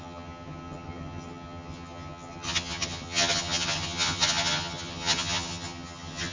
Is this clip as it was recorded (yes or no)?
no